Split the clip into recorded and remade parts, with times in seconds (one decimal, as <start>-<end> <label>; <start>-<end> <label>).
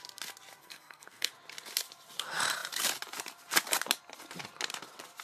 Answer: 0.0-0.6 recorded; 0.6-1.3 remade; 1.3-5.2 recorded